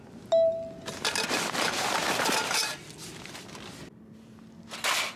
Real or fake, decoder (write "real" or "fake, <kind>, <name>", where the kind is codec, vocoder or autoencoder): real